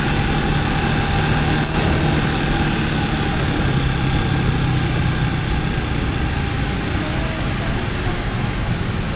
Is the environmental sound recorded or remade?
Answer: recorded